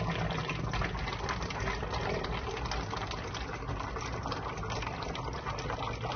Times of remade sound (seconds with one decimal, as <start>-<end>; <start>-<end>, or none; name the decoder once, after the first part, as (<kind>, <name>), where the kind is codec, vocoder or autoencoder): none